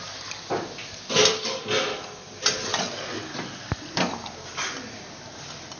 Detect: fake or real real